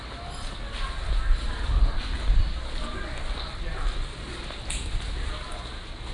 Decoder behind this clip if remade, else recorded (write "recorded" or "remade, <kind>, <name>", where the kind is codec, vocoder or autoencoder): recorded